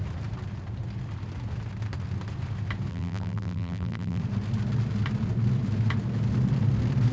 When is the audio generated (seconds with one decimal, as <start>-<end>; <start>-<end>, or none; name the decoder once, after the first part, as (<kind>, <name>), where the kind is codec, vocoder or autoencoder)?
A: 2.9-4.2 (vocoder, BigVGAN v2)